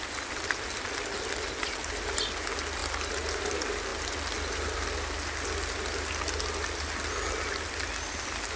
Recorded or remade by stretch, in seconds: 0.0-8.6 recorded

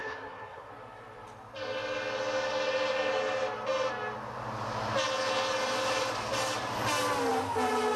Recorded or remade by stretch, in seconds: 0.0-0.7 remade; 0.7-8.0 recorded

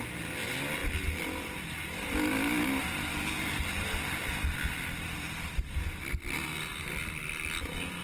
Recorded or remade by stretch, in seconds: 0.0-8.0 recorded

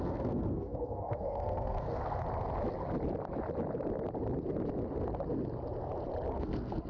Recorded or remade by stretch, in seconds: 0.0-2.2 remade; 2.2-6.3 recorded; 6.3-6.9 remade

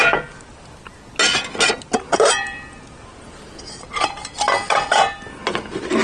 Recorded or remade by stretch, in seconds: 0.0-6.0 recorded

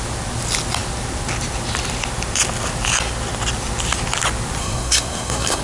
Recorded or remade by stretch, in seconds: 0.0-4.6 recorded; 4.6-5.6 remade